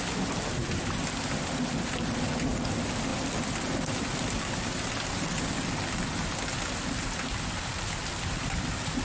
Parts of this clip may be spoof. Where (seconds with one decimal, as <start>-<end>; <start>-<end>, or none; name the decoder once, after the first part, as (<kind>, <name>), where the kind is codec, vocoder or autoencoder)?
none